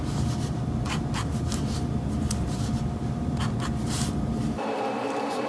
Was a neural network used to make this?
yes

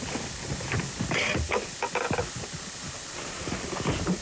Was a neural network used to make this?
no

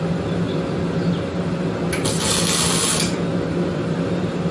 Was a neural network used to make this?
no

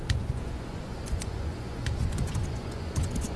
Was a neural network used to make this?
yes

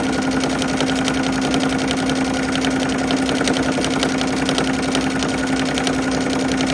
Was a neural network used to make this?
no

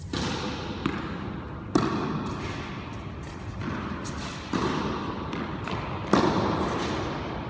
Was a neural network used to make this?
no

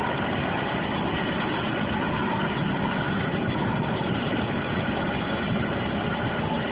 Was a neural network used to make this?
no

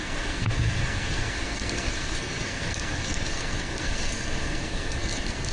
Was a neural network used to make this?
yes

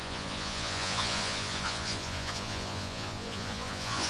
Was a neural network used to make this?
yes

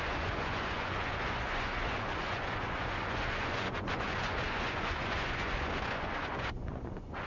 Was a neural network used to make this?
yes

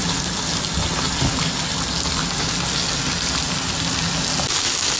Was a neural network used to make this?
no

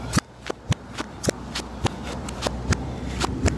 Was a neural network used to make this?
no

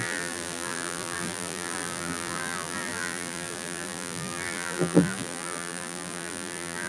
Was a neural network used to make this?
yes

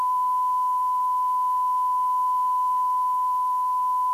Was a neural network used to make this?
no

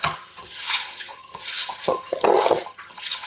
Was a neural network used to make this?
yes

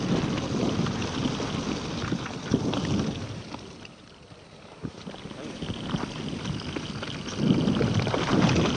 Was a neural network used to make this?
no